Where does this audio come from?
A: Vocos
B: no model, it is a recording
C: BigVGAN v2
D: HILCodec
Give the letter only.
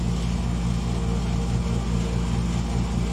B